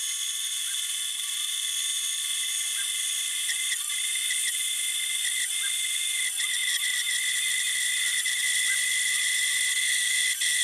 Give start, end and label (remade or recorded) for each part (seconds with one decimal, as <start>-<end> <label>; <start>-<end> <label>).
0.0-10.6 recorded